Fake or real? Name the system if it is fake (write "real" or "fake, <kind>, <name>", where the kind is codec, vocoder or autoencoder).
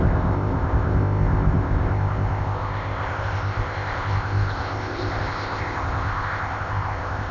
fake, codec, ZipCodec